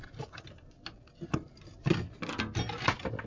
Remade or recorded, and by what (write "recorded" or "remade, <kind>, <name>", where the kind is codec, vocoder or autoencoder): recorded